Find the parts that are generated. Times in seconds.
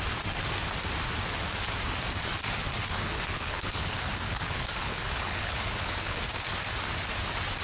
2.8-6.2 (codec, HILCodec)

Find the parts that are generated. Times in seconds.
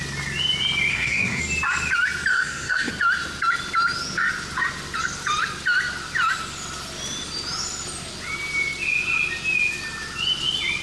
0.9-1.4 (codec, SNAC); 2.3-2.9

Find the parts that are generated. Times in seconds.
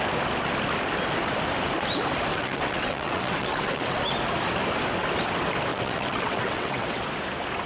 2.3-4.0 (vocoder, WaveNeXt); 5.7-7.0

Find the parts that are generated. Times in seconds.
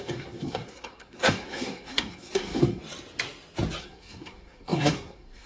0.0-2.8 (codec, SNAC); 3.8-5.5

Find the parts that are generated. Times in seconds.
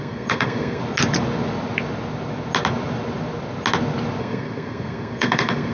0.0-0.8 (codec, SNAC); 4.2-5.7